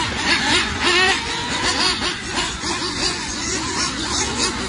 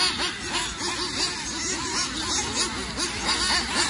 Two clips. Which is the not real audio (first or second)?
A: first